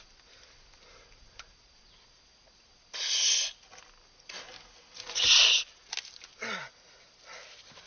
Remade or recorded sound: recorded